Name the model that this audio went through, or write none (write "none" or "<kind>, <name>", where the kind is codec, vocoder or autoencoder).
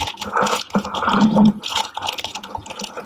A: vocoder, Vocos